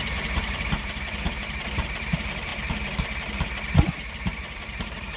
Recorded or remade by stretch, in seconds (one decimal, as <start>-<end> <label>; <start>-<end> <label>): 0.0-2.5 remade; 2.5-4.1 recorded; 4.1-5.2 remade